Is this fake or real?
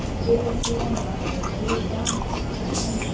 real